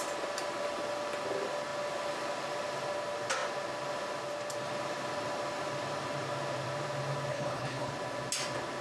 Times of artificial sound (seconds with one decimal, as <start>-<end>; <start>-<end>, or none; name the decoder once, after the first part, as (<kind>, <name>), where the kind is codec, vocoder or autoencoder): 7.3-7.9 (codec, HILCodec)